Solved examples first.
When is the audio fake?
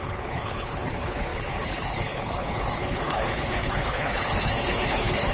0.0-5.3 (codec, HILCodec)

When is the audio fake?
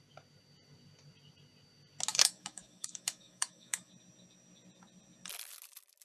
2.1-3.9 (autoencoder, DAC-VAE)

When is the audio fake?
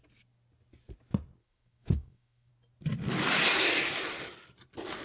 1.4-2.5 (autoencoder, DAC-VAE)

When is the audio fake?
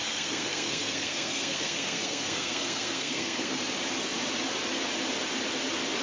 0.0-3.6 (codec, SNAC)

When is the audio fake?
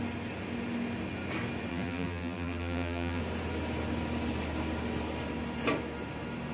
1.7-3.2 (vocoder, BigVGAN v2)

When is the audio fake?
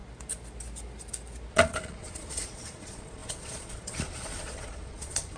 1.5-5.4 (vocoder, Vocos)